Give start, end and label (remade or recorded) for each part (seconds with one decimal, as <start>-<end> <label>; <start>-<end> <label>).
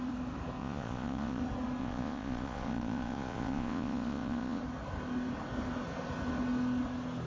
0.0-0.6 recorded; 0.6-1.4 remade; 1.4-1.8 recorded; 1.8-4.6 remade; 4.6-7.3 recorded